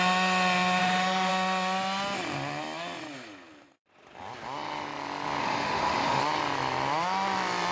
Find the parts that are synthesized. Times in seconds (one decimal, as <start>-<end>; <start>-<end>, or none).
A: 0.8-1.3; 5.4-6.2